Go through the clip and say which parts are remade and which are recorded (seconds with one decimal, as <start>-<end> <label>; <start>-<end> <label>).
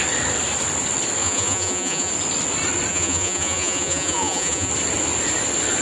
0.0-1.2 recorded; 1.2-2.1 remade; 2.1-2.9 recorded; 2.9-4.7 remade; 4.7-5.8 recorded